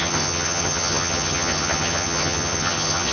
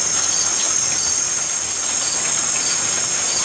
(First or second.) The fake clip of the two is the first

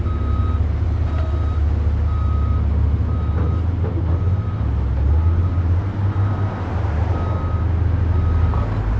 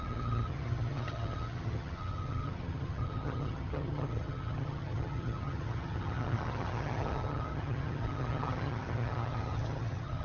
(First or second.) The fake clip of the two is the second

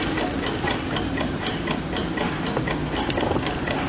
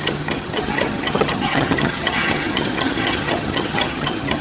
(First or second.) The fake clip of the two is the second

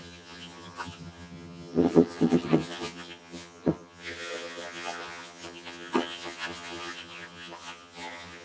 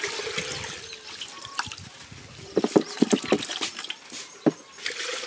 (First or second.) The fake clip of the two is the first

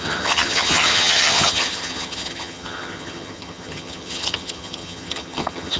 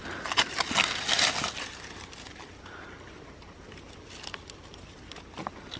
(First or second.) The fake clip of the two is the first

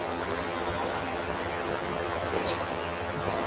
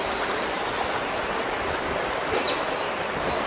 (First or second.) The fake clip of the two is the first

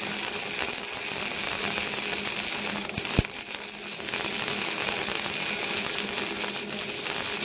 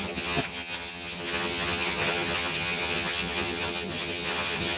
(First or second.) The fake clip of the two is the second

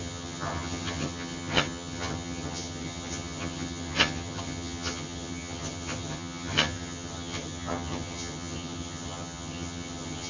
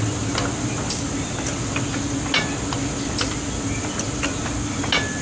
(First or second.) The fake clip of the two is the first